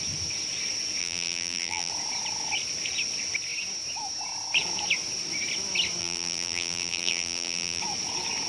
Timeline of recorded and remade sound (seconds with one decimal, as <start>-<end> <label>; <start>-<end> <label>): 0.0-1.0 recorded; 1.0-1.9 remade; 1.9-6.0 recorded; 6.0-7.8 remade; 7.8-8.5 recorded